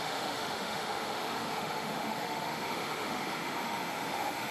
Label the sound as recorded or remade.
remade